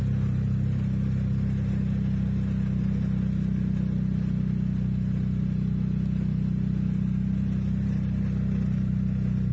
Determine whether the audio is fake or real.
real